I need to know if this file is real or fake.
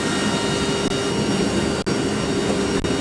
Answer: real